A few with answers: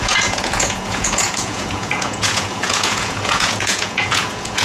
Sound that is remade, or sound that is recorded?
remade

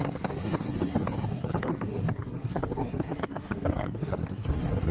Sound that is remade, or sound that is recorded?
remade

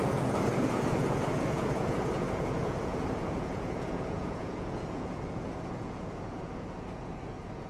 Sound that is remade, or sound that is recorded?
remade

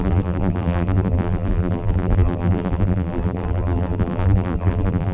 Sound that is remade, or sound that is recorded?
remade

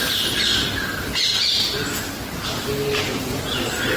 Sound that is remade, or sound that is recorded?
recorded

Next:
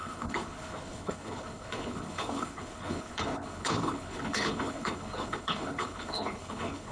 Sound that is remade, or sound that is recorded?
remade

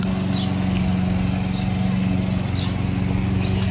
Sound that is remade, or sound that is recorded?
recorded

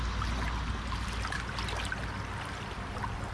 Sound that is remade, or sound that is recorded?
recorded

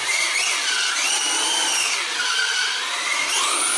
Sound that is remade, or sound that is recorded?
recorded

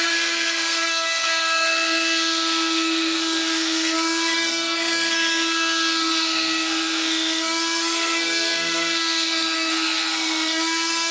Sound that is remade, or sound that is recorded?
remade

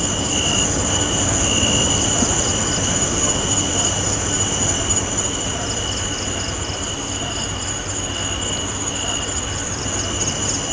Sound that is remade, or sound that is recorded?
recorded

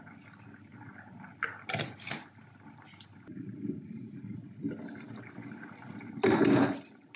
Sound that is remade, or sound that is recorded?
recorded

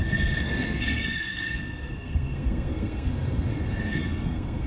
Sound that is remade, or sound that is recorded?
remade